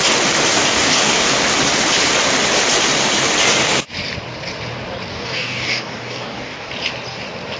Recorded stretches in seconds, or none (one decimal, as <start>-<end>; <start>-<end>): 0.0-0.5; 1.1-5.1; 6.7-7.6